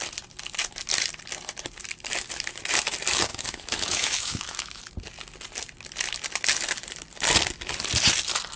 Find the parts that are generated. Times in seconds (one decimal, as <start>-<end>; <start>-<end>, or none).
3.3-4.8